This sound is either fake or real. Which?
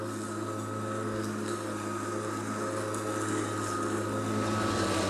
real